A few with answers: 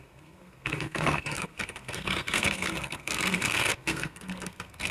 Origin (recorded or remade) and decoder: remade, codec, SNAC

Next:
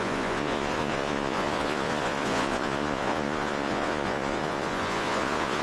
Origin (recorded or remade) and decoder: remade, vocoder, Vocos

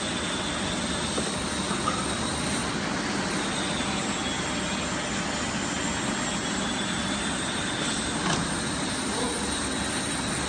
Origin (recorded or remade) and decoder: recorded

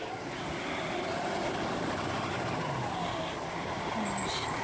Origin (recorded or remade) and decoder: remade, vocoder, BigVGAN v2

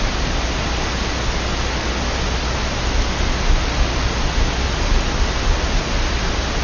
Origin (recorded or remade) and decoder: recorded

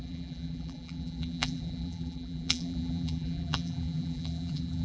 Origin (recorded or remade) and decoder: remade, vocoder, BigVGAN v2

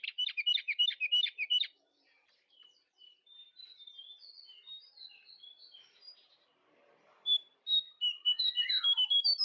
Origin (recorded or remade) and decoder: remade, vocoder, BigVGAN v2